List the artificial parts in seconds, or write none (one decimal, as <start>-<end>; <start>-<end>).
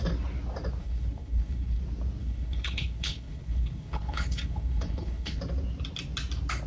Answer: 0.8-1.8; 2.2-5.4